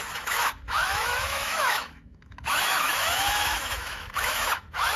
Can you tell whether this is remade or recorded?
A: remade